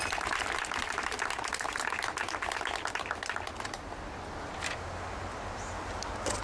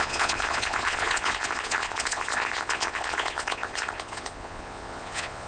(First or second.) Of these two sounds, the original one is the first